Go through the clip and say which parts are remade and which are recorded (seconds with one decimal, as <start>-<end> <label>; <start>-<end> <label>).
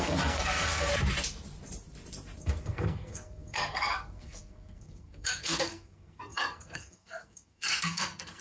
0.0-0.9 remade; 0.9-2.4 recorded; 2.4-8.4 remade